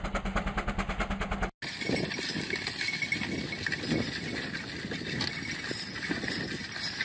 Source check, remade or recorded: recorded